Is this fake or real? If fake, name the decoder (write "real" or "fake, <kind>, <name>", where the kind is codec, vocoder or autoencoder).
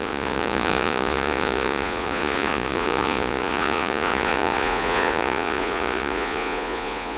fake, vocoder, Vocos